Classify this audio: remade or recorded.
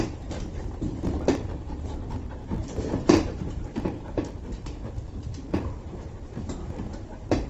remade